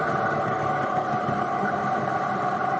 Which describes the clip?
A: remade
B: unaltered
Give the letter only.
A